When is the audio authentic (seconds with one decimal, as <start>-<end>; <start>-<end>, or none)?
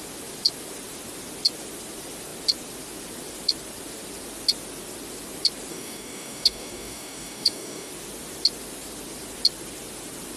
0.0-5.7; 7.9-10.4